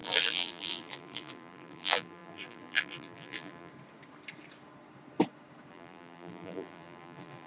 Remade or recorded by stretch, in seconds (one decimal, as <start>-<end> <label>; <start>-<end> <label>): 0.0-3.7 remade; 3.7-5.7 recorded; 5.7-7.5 remade